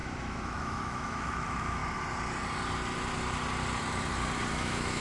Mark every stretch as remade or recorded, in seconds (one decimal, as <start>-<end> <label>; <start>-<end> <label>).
0.0-1.8 remade; 1.8-4.5 recorded; 4.5-5.0 remade